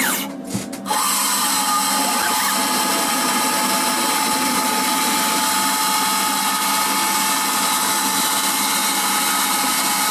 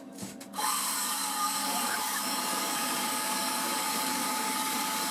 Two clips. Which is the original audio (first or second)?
first